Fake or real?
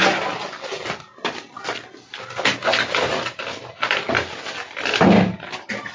real